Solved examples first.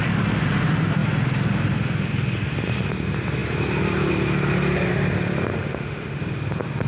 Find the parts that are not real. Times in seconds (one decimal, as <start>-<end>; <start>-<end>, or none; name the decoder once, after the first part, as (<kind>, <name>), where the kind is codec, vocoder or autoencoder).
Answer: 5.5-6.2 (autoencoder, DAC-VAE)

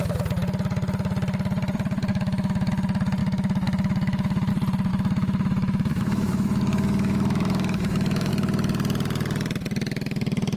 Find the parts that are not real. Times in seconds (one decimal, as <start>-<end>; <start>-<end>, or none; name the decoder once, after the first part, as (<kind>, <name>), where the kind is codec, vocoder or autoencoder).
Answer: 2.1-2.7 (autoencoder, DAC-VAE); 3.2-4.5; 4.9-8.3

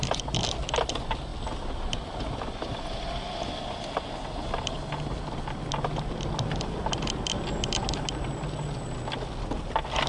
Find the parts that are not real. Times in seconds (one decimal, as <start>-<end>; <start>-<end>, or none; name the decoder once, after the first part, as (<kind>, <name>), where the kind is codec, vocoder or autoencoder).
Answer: none

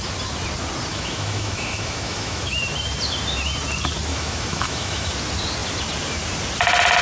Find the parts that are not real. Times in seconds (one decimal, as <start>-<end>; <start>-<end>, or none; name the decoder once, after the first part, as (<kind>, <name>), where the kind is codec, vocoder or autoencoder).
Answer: 0.9-2.6 (autoencoder, DAC-VAE); 4.1-5.1

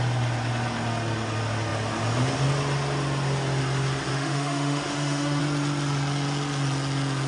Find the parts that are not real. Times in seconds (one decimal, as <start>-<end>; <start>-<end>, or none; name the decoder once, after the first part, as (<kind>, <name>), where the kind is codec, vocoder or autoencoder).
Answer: 4.1-5.4 (autoencoder, DAC-VAE)

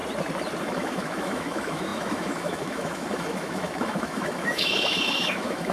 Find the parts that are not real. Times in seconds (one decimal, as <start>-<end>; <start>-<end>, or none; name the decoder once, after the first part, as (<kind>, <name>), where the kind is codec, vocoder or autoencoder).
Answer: 0.6-5.7 (autoencoder, DAC-VAE)